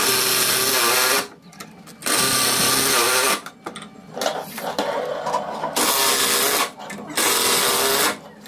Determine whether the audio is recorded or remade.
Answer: recorded